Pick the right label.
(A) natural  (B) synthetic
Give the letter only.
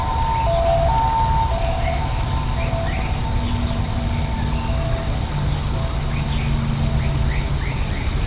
A